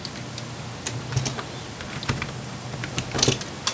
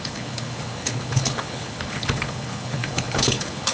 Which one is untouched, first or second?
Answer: first